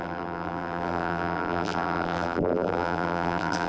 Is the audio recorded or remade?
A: remade